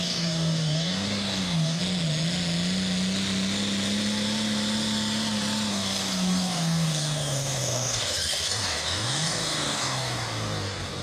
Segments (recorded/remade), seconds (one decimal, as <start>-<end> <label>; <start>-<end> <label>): 0.0-1.8 remade; 1.8-5.7 recorded; 5.7-11.0 remade